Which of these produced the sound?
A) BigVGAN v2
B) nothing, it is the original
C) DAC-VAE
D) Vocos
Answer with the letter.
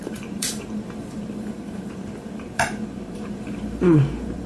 A